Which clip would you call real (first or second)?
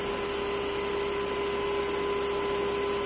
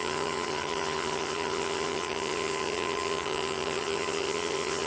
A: first